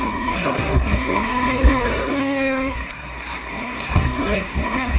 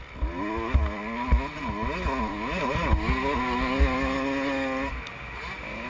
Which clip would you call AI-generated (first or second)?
first